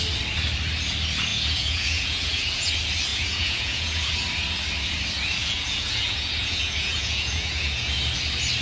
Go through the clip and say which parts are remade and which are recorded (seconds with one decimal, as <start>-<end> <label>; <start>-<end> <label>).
0.0-1.3 recorded; 1.3-2.7 remade; 2.7-3.1 recorded; 3.1-4.2 remade; 4.2-5.4 recorded; 5.4-7.9 remade; 7.9-8.6 recorded